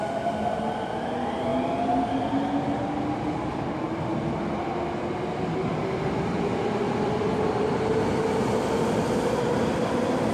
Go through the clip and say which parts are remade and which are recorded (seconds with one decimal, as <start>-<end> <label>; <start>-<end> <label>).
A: 0.0-10.3 recorded